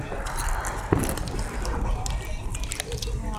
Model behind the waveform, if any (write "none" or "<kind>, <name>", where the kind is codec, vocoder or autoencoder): none